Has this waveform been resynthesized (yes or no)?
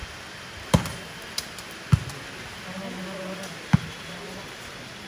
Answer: no